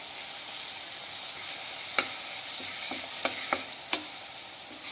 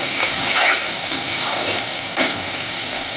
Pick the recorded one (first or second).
first